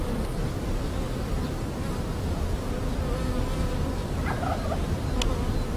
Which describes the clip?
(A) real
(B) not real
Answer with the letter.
A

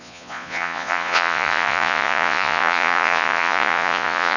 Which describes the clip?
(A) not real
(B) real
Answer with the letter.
A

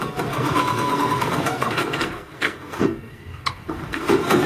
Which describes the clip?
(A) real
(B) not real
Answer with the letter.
B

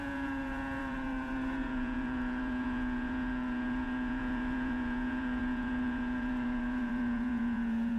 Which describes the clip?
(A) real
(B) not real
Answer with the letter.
B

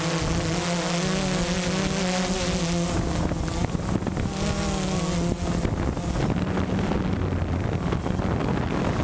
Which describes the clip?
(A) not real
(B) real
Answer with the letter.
B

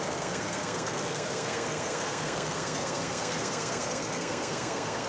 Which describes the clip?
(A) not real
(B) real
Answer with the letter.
A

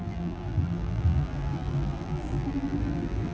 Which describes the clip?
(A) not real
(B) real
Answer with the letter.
A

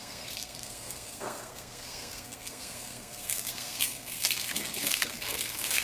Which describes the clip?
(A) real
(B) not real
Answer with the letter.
B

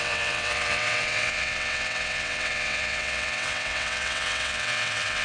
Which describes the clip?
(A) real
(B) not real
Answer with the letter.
B